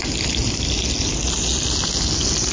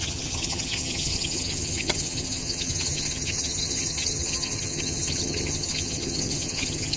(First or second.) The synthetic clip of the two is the second